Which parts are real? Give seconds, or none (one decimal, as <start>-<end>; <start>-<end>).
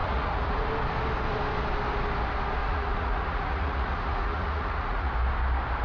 0.7-2.6; 5.1-5.8